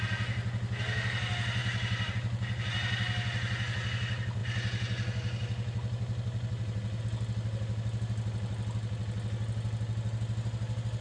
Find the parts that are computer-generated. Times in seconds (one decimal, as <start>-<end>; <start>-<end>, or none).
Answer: none